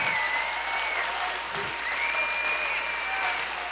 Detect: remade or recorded recorded